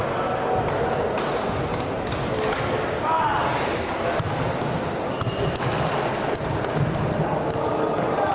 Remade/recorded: recorded